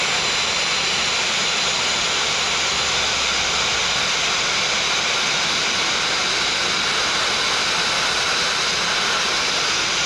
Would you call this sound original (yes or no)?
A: yes